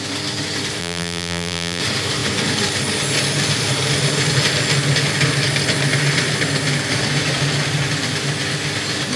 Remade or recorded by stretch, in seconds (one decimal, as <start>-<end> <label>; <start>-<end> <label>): 0.0-0.8 recorded; 0.8-1.8 remade; 1.8-9.2 recorded